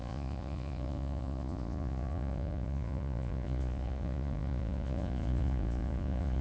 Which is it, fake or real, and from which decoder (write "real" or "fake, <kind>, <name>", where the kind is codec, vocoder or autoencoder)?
fake, vocoder, Vocos